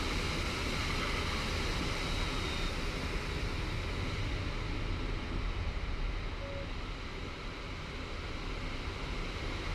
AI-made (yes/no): no